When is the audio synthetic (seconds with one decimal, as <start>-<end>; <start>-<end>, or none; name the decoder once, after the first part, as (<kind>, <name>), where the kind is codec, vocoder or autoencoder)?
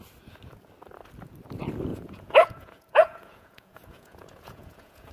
1.9-5.1 (vocoder, Vocos)